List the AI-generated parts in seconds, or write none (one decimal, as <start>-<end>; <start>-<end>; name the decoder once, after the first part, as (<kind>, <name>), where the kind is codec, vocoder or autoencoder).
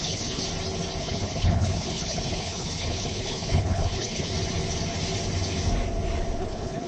0.0-0.4 (codec, HILCodec); 1.0-4.3; 6.4-6.9